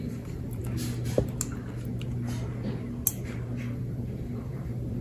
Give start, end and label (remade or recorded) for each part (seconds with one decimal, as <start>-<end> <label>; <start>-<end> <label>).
0.0-0.6 remade; 0.6-3.6 recorded; 3.6-5.0 remade